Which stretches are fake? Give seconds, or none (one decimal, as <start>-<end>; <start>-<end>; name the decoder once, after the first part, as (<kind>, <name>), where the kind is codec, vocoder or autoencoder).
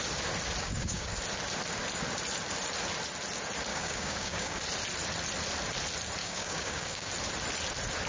0.6-1.1 (codec, DAC); 3.7-4.6; 6.2-7.1